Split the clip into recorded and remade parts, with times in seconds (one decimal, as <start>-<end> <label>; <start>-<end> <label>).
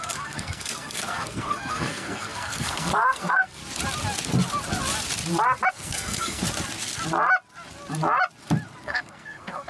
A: 0.0-3.6 remade; 3.6-5.7 recorded; 5.7-6.4 remade; 6.4-8.8 recorded; 8.8-9.7 remade